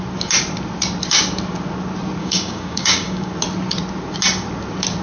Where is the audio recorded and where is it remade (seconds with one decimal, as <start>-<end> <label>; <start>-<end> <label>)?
0.0-2.2 recorded; 2.2-3.3 remade; 3.3-5.0 recorded